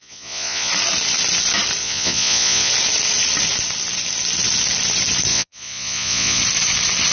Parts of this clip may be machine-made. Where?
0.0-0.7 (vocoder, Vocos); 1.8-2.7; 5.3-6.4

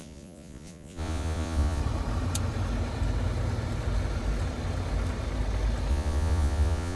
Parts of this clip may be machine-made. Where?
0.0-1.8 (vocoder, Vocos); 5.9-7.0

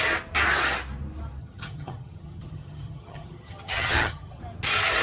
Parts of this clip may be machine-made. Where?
1.4-4.4 (vocoder, HiFi-GAN)